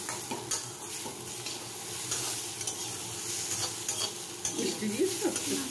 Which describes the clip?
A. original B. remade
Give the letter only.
A